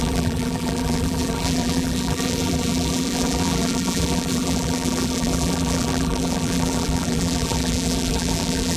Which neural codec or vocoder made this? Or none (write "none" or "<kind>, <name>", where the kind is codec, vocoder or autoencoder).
vocoder, BigVGAN v2